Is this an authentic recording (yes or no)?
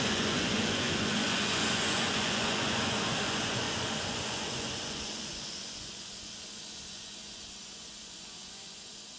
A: no